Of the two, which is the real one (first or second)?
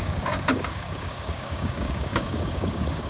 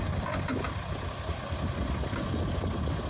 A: second